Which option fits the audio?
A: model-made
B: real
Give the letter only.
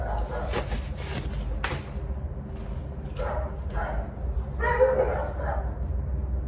B